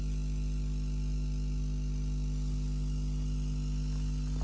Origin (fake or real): real